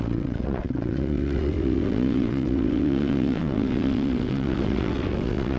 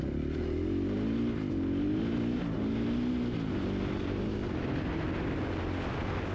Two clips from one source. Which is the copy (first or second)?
first